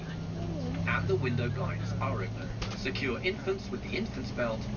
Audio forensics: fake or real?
real